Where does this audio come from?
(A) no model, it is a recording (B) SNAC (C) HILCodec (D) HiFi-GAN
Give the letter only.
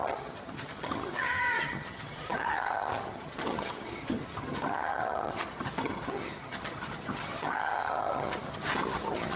D